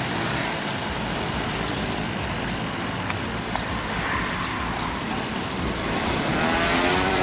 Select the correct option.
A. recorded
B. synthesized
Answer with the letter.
B